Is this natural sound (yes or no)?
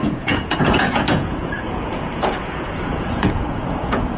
no